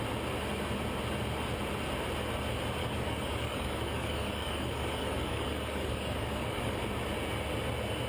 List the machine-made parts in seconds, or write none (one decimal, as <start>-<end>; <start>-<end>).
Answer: 2.8-6.8